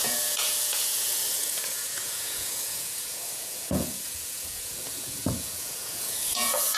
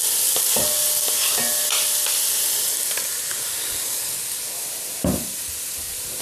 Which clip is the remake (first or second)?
first